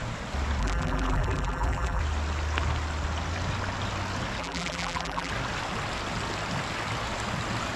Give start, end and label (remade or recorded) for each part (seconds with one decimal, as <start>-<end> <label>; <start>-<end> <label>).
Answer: 0.0-0.6 recorded; 0.6-2.0 remade; 2.0-4.4 recorded; 4.4-5.3 remade; 5.3-7.8 recorded